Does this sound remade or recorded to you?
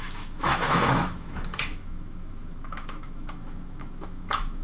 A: remade